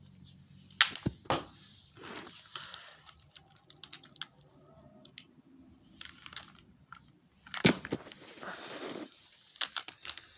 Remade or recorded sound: recorded